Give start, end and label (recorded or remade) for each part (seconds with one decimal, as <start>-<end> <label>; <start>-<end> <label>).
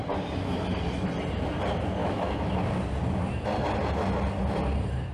0.0-2.0 recorded; 2.0-2.5 remade; 2.5-5.1 recorded